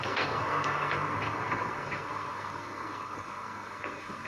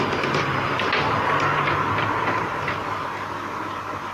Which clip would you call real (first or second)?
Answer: second